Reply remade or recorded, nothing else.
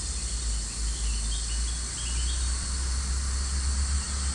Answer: recorded